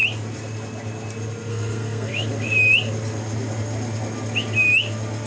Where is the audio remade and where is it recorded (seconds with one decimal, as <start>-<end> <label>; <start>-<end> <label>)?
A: 0.0-1.5 recorded; 1.5-2.1 remade; 2.1-5.3 recorded